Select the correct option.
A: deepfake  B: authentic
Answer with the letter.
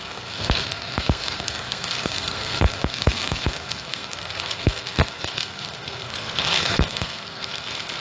A